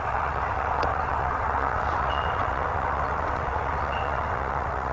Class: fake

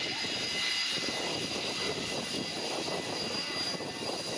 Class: real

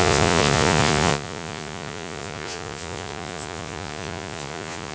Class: fake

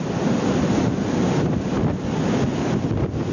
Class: real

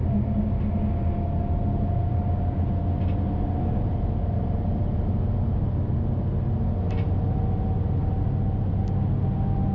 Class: real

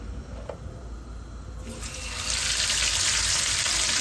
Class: real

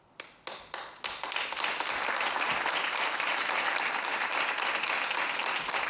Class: real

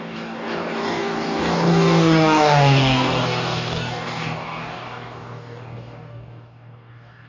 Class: fake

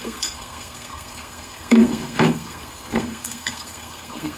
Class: fake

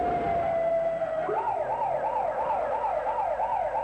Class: real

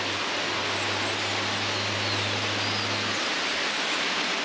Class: real